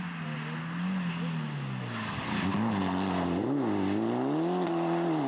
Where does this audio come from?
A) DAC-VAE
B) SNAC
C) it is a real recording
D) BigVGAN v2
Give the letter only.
C